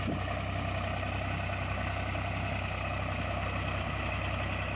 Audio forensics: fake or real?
real